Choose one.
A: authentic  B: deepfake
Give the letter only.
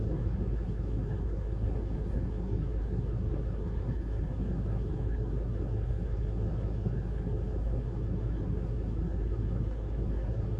B